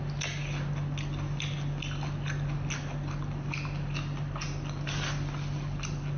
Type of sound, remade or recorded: recorded